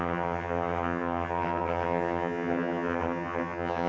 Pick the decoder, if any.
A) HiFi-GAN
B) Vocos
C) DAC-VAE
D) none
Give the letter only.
A